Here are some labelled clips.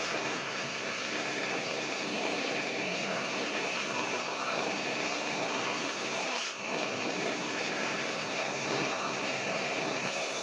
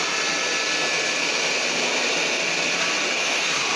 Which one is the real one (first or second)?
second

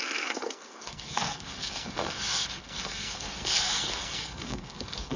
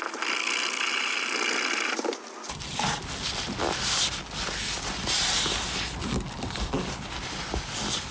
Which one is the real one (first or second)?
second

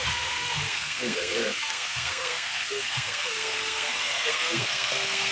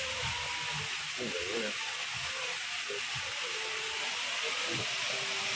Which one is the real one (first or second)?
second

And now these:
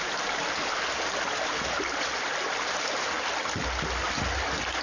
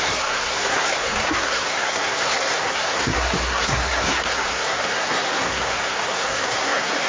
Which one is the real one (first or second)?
first